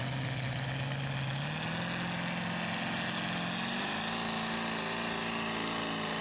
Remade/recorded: recorded